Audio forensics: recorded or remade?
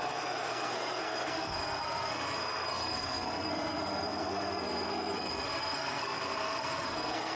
remade